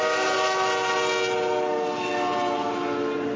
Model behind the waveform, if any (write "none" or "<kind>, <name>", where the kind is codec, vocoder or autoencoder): none